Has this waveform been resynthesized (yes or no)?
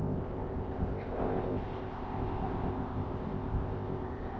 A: yes